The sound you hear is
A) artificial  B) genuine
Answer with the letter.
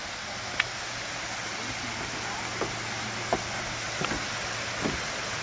B